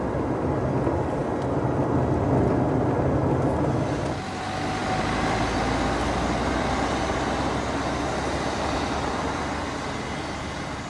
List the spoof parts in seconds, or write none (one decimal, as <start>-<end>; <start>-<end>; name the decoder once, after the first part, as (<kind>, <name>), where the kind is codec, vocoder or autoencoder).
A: none